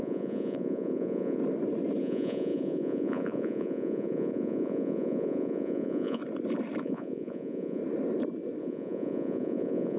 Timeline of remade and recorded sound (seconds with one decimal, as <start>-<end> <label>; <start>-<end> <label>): 0.0-1.4 remade; 1.4-2.0 recorded; 2.0-6.2 remade; 6.2-6.8 recorded; 6.8-7.8 remade; 7.8-8.6 recorded; 8.6-10.0 remade